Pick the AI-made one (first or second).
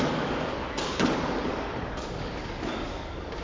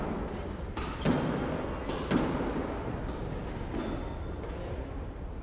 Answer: first